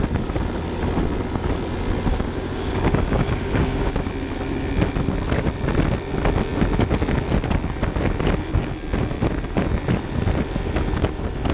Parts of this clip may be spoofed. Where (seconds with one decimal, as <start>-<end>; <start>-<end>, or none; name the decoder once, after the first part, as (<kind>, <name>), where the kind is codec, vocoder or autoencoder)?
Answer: 2.1-4.1 (codec, DAC)